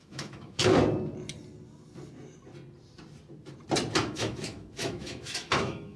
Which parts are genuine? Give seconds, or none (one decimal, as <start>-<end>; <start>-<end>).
0.6-4.0